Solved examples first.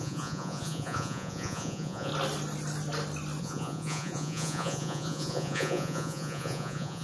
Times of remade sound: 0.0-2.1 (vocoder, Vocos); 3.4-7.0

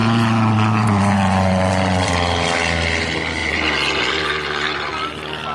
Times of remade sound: 0.0-2.1 (vocoder, Vocos); 3.4-4.9

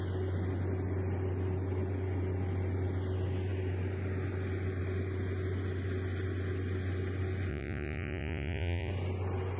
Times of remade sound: 7.5-8.9 (vocoder, Vocos)

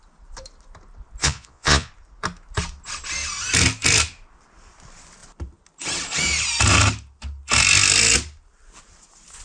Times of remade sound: 1.2-1.9 (vocoder, Vocos)

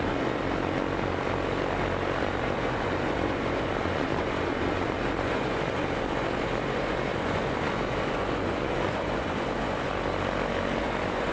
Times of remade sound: 0.0-0.4 (vocoder, Vocos); 2.2-9.9; 10.8-11.3